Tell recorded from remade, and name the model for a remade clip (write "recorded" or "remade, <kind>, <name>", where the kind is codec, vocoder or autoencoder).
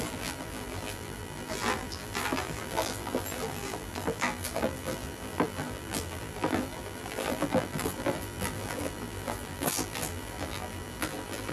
remade, vocoder, BigVGAN v2